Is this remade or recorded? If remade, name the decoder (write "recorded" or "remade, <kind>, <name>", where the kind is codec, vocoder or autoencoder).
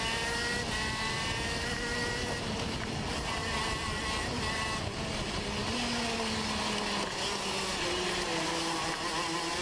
recorded